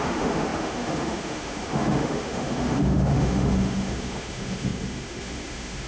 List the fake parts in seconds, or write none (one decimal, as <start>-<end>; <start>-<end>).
0.0-5.9

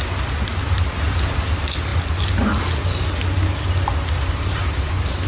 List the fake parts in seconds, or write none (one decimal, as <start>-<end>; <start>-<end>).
none

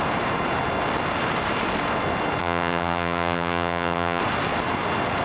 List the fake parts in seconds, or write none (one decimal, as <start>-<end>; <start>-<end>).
2.4-4.2